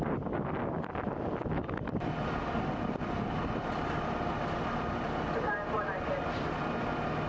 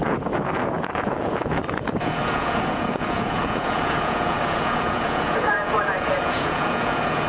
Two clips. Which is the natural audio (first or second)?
first